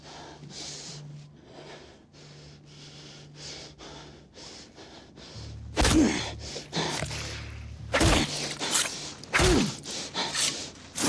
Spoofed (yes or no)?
no